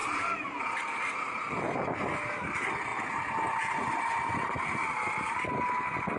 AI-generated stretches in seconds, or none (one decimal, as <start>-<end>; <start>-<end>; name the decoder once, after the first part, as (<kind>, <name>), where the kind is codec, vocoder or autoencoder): none